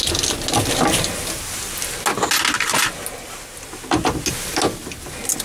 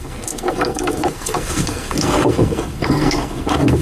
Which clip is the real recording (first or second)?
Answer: first